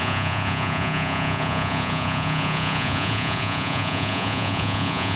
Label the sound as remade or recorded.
remade